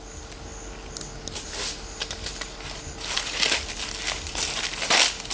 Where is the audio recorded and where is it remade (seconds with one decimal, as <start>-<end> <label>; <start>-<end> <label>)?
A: 0.0-5.3 recorded